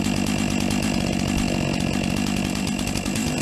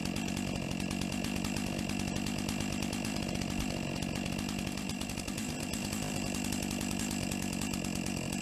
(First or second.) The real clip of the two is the first